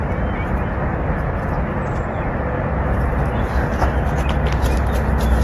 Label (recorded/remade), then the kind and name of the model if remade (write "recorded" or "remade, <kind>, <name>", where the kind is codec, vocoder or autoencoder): recorded